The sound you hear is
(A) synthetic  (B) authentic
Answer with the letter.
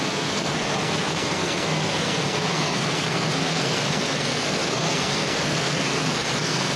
A